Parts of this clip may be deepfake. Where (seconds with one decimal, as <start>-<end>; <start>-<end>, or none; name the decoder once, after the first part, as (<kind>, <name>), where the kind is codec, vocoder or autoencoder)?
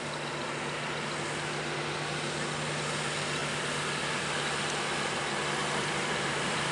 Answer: 5.6-6.7 (vocoder, BigVGAN v2)